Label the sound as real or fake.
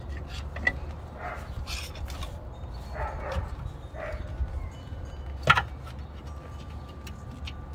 real